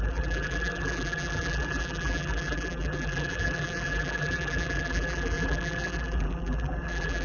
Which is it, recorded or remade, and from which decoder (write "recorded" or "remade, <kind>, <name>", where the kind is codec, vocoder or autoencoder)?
remade, vocoder, BigVGAN v2